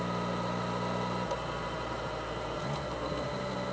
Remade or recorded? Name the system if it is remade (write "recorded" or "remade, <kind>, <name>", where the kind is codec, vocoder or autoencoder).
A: recorded